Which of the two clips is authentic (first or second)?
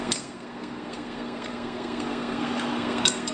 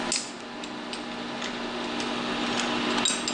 second